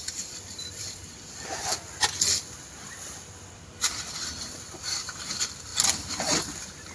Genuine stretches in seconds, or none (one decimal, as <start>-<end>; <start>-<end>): 0.0-6.9